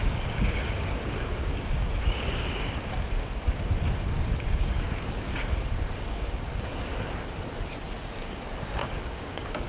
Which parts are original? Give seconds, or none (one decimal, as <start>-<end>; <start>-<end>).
6.9-8.0